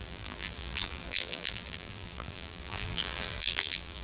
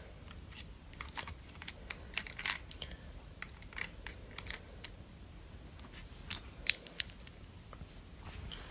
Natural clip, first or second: second